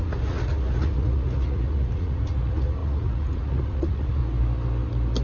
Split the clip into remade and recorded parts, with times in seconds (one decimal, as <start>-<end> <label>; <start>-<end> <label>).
0.0-4.2 remade; 4.2-5.2 recorded